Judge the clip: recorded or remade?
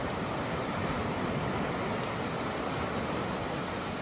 recorded